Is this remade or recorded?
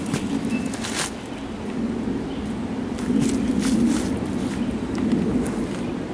recorded